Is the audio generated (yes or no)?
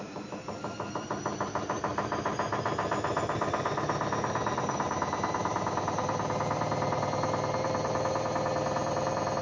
yes